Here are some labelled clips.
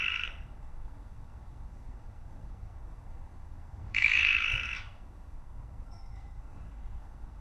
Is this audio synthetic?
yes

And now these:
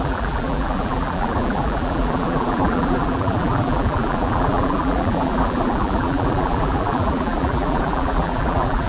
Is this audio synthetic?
yes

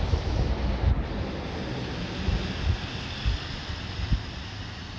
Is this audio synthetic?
no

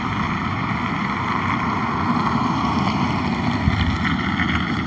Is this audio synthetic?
no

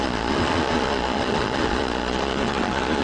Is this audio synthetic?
yes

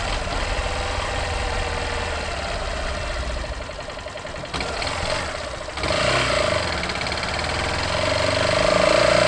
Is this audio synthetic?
no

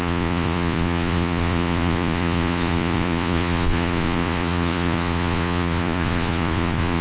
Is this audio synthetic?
yes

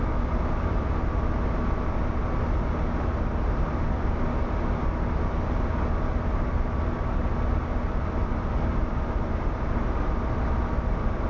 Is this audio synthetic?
no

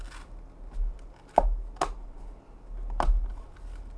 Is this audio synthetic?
no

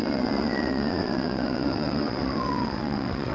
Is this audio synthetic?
yes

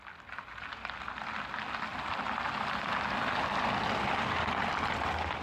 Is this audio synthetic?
no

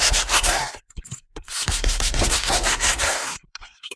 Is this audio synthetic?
yes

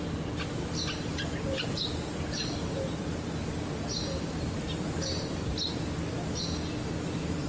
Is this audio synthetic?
no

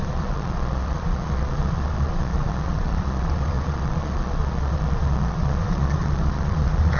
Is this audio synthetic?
yes